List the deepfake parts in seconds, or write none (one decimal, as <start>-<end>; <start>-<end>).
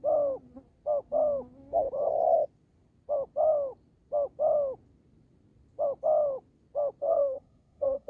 7.0-8.1